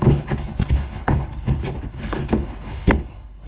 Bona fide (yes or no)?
no